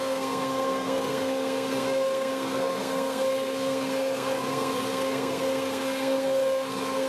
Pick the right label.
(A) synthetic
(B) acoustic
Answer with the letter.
A